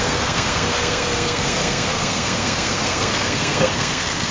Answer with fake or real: fake